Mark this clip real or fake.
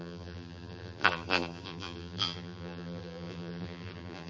fake